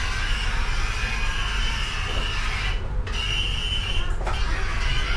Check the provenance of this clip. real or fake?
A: real